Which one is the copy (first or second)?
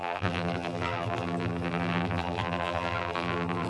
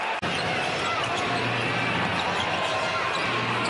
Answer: first